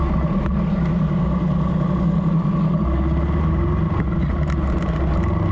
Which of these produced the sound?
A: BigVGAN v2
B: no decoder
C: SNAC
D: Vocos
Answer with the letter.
B